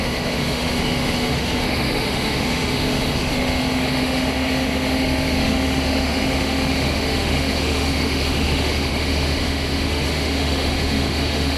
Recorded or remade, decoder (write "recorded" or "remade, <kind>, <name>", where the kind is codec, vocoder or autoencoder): remade, autoencoder, DAC-VAE